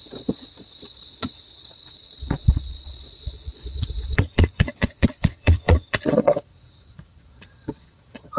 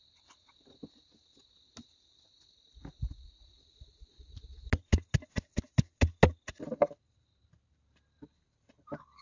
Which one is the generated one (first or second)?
first